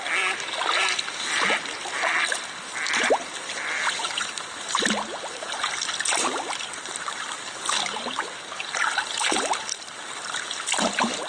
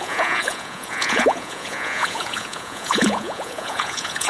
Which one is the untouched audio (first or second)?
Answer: first